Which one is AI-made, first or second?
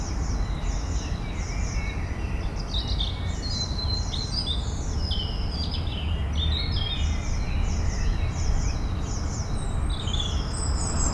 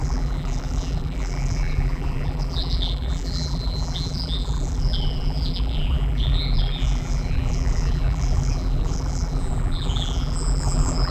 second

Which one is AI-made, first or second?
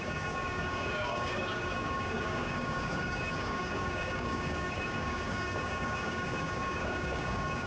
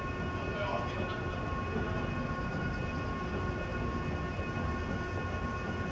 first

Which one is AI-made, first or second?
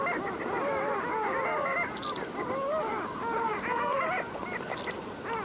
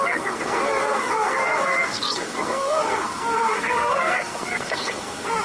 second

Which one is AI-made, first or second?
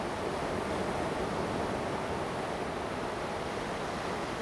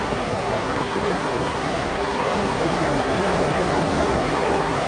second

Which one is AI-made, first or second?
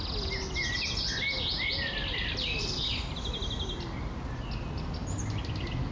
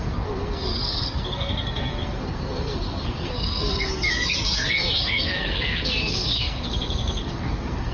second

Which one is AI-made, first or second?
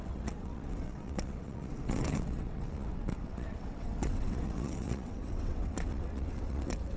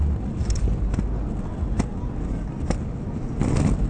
first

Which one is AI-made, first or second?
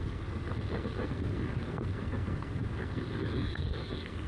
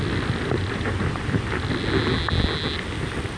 first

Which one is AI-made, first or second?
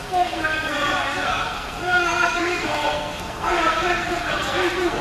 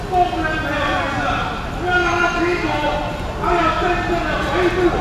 first